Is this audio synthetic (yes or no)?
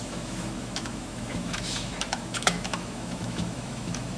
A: yes